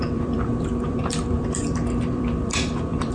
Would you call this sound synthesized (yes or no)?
yes